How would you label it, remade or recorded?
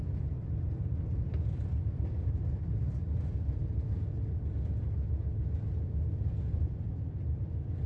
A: recorded